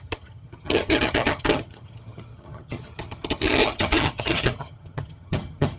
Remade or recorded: remade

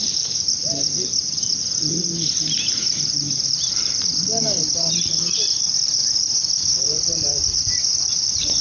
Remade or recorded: remade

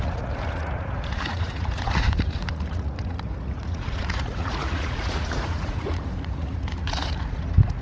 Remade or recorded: remade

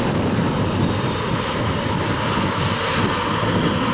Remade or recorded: recorded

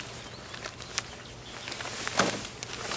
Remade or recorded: recorded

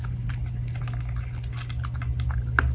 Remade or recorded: recorded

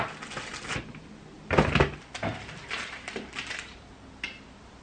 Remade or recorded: recorded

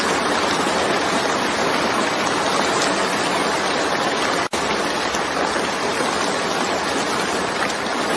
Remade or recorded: recorded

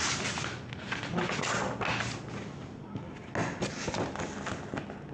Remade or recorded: recorded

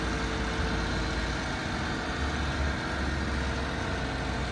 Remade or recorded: recorded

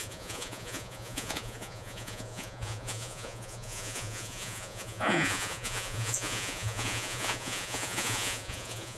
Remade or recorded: remade